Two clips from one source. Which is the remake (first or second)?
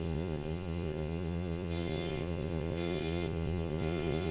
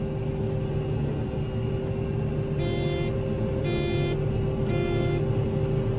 first